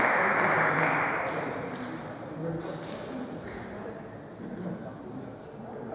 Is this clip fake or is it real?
real